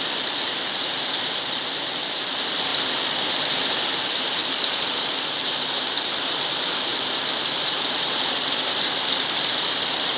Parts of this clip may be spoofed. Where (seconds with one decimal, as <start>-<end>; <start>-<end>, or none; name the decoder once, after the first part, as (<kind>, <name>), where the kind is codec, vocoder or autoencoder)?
0.0-2.7 (vocoder, BigVGAN v2); 3.5-10.2